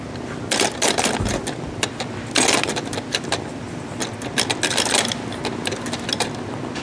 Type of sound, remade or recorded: recorded